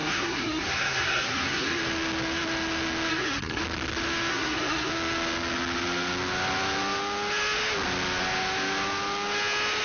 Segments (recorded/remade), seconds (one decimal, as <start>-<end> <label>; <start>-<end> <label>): 0.0-1.8 remade; 1.8-3.1 recorded; 3.1-3.6 remade; 3.6-4.3 recorded; 4.3-4.9 remade; 4.9-9.8 recorded